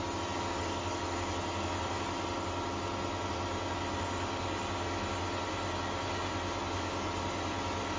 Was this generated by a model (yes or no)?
no